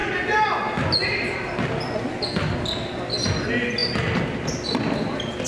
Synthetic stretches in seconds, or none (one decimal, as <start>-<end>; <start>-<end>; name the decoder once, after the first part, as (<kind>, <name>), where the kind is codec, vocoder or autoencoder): none